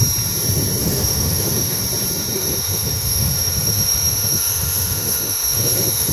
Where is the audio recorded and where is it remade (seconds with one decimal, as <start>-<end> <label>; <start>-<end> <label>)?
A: 0.0-0.8 recorded; 0.8-1.8 remade; 1.8-2.3 recorded; 2.3-6.1 remade